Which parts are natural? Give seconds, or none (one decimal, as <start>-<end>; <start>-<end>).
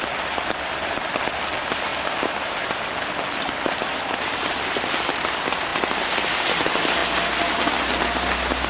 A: 0.0-8.7